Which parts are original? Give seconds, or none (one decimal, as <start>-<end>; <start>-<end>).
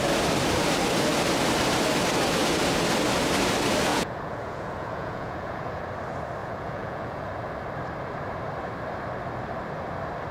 0.0-3.9; 5.8-6.4; 7.3-10.3